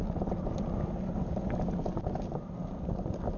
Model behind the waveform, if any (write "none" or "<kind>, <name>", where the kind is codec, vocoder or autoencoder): none